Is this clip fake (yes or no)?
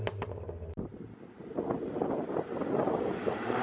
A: no